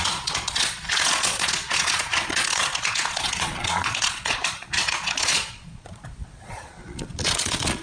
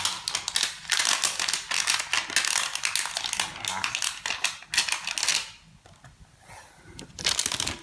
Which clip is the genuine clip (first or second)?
second